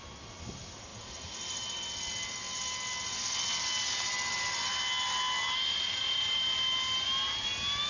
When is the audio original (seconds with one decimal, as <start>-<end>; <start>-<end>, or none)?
0.0-7.9